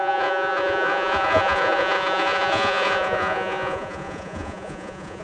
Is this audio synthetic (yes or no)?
yes